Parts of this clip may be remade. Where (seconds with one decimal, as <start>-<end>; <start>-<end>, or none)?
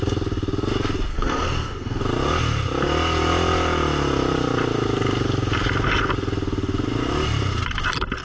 1.1-2.0